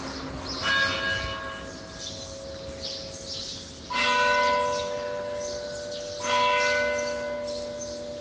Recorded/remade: recorded